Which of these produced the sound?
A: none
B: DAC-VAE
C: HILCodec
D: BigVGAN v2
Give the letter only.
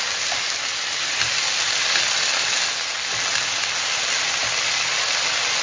A